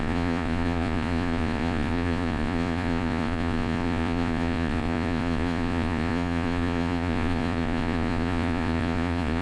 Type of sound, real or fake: fake